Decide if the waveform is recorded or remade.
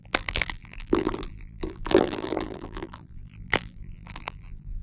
remade